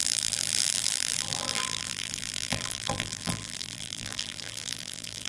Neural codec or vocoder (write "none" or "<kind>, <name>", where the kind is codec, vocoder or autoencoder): vocoder, BigVGAN v2